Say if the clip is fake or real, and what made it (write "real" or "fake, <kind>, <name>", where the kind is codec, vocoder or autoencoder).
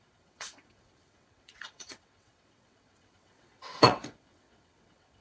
fake, vocoder, WaveNeXt